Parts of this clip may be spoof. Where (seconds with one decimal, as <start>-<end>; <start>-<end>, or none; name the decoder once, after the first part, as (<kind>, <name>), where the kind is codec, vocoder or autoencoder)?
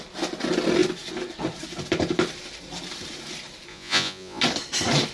3.7-4.4 (vocoder, Vocos)